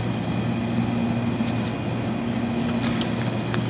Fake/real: real